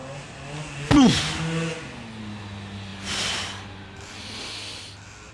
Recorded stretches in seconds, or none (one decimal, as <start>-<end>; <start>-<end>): 0.0-5.3